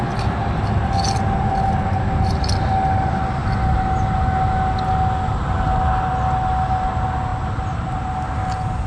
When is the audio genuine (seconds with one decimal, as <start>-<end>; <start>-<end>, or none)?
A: 0.0-8.9